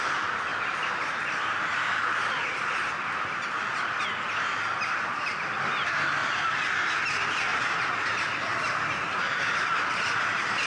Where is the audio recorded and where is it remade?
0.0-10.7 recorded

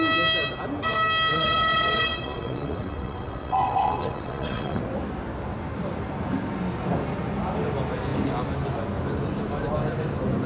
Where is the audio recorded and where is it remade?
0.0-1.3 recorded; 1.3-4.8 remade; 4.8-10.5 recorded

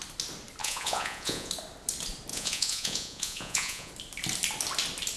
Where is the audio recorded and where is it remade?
0.0-0.6 recorded; 0.6-1.5 remade; 1.5-2.3 recorded; 2.3-3.9 remade; 3.9-5.2 recorded

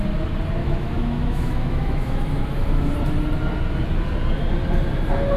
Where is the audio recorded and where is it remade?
0.0-0.6 recorded; 0.6-2.9 remade; 2.9-5.4 recorded

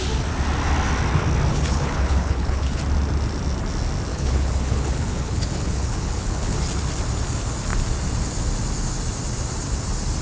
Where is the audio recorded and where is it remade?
0.0-1.5 recorded; 1.5-2.8 remade; 2.8-4.1 recorded; 4.1-6.6 remade; 6.6-10.2 recorded

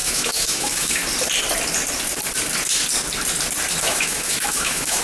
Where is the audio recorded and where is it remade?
0.0-1.0 remade; 1.0-3.8 recorded; 3.8-5.0 remade